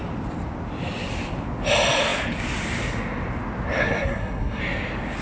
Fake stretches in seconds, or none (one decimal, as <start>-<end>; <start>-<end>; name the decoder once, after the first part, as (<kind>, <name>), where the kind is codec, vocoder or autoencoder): 3.8-4.6 (codec, SNAC)